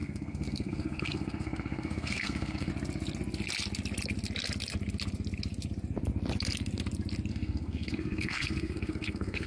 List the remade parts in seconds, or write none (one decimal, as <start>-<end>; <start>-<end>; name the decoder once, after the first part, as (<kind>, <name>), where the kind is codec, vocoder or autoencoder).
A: 0.0-2.7 (codec, SNAC); 7.3-9.5